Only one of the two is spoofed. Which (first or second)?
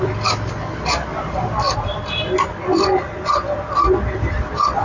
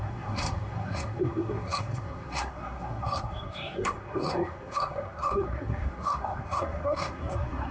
second